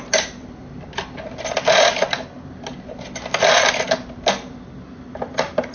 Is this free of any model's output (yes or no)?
yes